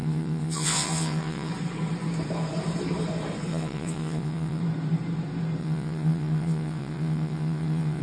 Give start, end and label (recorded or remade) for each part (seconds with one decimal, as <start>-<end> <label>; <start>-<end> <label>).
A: 0.0-1.5 remade; 1.5-3.5 recorded; 3.5-4.6 remade; 4.6-5.6 recorded; 5.6-8.0 remade